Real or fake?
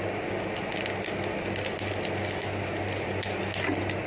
real